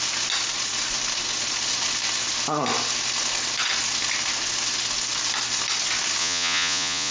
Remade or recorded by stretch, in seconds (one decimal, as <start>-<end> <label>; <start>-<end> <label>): 0.0-6.2 recorded; 6.2-7.1 remade